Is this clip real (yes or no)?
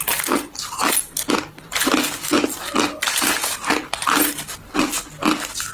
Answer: yes